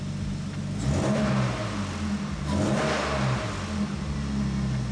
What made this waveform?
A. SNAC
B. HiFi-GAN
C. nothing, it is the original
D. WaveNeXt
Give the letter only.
C